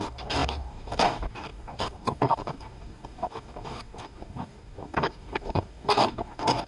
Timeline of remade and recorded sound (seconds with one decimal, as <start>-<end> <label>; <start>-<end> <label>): 0.0-6.7 remade